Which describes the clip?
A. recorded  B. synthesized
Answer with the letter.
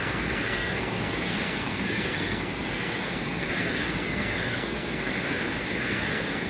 B